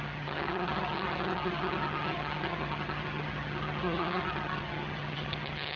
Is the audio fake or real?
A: fake